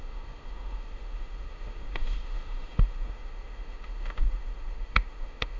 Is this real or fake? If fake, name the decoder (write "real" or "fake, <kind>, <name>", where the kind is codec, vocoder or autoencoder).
fake, autoencoder, DAC-VAE